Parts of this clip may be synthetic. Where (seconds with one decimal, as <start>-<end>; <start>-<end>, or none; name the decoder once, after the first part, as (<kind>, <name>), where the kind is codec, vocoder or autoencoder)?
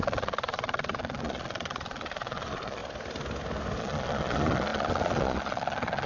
0.0-2.8 (vocoder, Vocos); 3.8-6.1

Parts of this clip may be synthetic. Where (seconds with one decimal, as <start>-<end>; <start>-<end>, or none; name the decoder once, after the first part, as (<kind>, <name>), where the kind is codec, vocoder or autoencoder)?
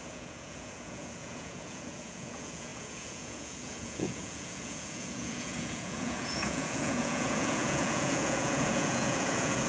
0.0-9.7 (vocoder, Vocos)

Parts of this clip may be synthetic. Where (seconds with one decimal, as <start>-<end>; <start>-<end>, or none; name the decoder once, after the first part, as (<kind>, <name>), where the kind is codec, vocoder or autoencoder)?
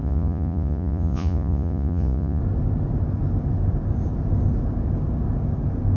0.0-2.4 (vocoder, Vocos)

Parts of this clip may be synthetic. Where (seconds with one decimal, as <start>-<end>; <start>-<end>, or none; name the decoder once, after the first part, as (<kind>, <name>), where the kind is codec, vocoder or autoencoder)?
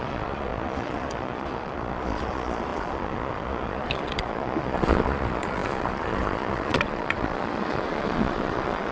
0.0-8.9 (vocoder, Vocos)